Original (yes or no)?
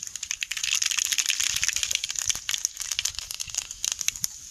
yes